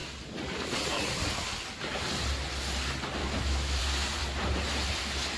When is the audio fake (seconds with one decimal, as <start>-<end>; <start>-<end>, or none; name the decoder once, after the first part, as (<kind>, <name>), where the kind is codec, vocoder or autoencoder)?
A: 3.2-3.8 (autoencoder, DAC-VAE)